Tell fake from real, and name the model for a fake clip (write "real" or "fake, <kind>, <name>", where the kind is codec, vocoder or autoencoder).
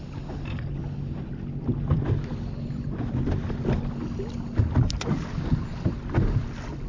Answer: real